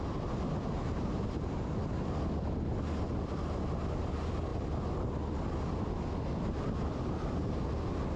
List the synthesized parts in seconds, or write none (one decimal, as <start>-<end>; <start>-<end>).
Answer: none